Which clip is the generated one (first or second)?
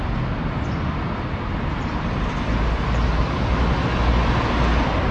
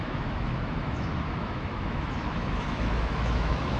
second